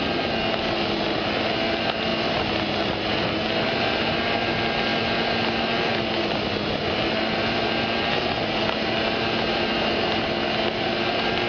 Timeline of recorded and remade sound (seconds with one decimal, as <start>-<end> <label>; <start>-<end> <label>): 0.0-11.5 recorded